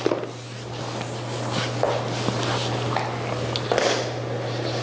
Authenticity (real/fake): real